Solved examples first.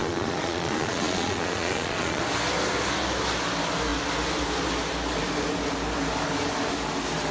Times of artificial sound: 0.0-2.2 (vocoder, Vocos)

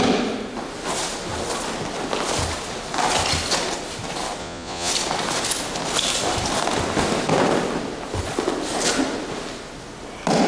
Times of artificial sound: 4.4-4.9 (vocoder, Vocos)

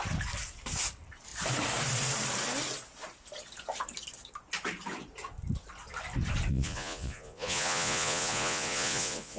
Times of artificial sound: 6.5-9.4 (vocoder, Vocos)

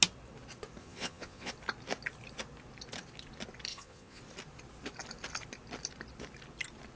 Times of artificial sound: 0.8-1.5 (vocoder, Vocos); 3.7-4.2

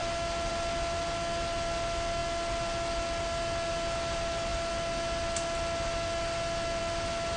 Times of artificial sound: none

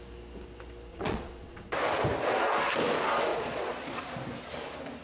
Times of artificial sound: 0.9-1.7 (vocoder, Vocos); 3.3-4.0